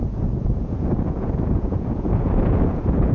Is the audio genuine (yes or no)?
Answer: no